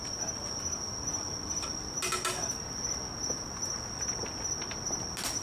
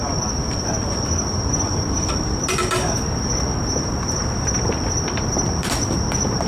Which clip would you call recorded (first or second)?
first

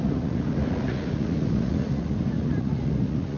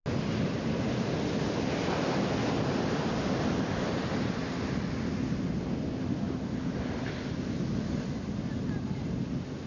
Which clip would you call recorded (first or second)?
second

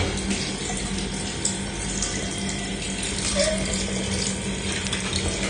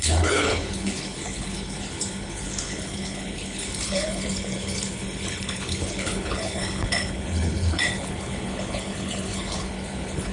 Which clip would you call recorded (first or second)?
first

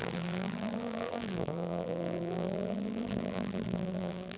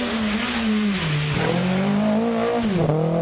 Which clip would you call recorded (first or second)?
second